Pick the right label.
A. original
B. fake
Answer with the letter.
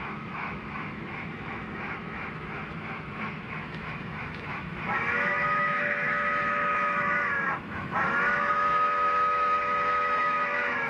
B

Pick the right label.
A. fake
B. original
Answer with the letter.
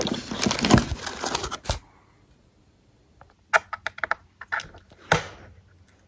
B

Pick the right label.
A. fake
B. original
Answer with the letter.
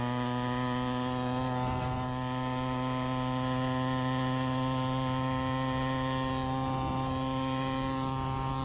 B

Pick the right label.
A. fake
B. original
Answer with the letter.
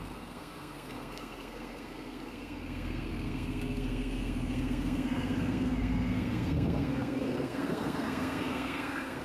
A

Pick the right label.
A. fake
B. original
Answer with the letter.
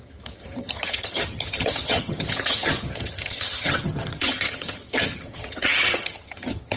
A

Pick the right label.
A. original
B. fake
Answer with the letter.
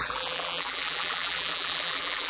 B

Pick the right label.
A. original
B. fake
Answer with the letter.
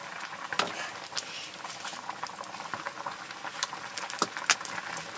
A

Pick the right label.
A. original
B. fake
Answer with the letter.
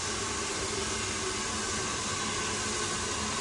A